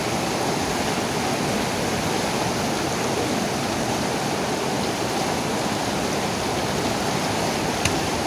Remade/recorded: remade